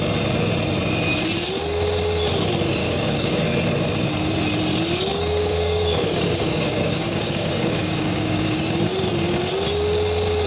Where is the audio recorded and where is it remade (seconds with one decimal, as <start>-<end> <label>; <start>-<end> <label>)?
0.0-2.8 recorded; 2.8-3.4 remade; 3.4-5.1 recorded; 5.1-8.6 remade; 8.6-10.5 recorded